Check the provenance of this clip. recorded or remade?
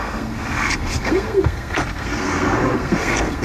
remade